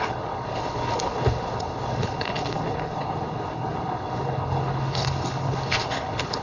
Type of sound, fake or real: fake